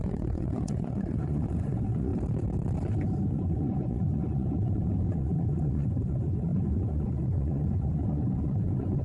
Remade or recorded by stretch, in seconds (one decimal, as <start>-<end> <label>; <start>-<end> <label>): 0.0-2.1 remade; 2.1-3.3 recorded; 3.3-9.0 remade